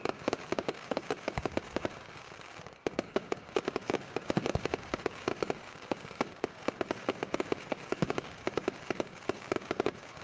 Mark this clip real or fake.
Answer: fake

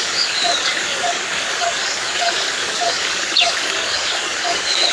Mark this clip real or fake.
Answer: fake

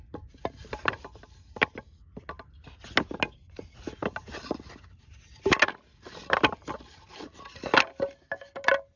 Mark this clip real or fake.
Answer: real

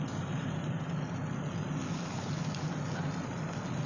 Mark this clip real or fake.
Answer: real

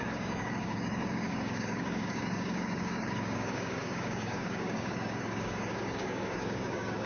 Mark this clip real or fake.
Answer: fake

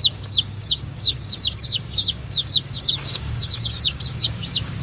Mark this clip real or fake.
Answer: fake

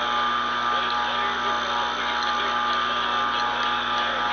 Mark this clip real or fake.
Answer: real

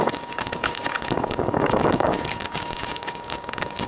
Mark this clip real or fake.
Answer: fake